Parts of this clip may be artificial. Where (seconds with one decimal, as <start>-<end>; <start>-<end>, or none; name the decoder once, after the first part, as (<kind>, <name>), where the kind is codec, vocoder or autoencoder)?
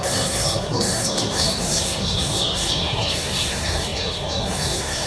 0.0-5.1 (codec, SNAC)